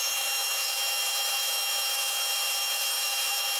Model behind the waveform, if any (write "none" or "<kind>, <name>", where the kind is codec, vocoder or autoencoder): autoencoder, DAC-VAE